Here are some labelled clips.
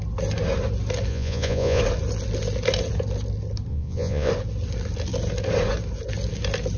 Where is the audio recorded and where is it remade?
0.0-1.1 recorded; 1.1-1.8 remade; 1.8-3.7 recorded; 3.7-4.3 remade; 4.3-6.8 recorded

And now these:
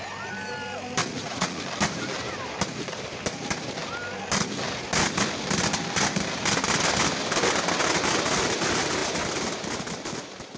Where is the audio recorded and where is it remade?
0.0-1.0 recorded; 1.0-1.6 remade; 1.6-10.6 recorded

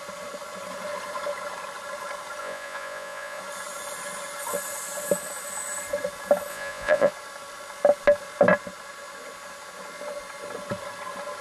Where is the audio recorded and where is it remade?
0.0-2.4 recorded; 2.4-3.4 remade; 3.4-6.5 recorded; 6.5-7.1 remade; 7.1-11.4 recorded

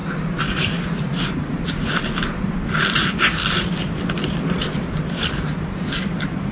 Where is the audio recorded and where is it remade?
0.0-6.5 recorded